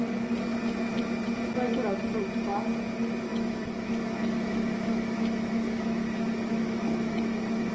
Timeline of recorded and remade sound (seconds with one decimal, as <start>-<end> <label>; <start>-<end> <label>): 0.0-3.3 recorded; 3.3-7.7 remade